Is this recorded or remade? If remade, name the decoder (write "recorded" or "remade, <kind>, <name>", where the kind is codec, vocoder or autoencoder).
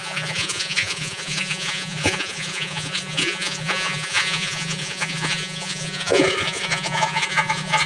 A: remade, vocoder, Vocos